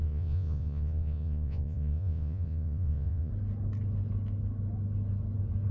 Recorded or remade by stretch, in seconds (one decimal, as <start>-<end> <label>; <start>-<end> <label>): 0.0-3.3 remade; 3.3-5.7 recorded